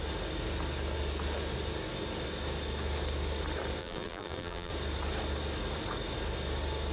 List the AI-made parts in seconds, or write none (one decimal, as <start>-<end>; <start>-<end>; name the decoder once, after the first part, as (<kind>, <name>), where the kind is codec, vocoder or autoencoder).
3.8-4.7 (vocoder, BigVGAN v2)